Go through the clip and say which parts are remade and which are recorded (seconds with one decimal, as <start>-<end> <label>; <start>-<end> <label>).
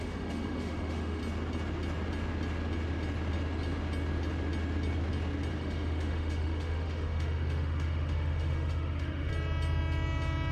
0.0-1.2 remade; 1.2-5.5 recorded; 5.5-9.3 remade; 9.3-10.5 recorded